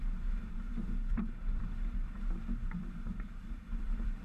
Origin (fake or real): fake